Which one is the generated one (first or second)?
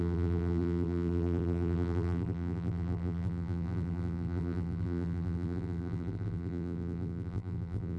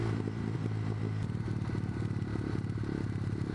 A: first